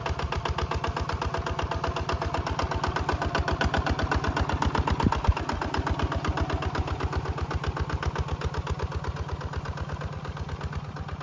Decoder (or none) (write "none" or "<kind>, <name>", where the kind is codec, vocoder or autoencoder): none